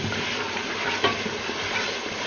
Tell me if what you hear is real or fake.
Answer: real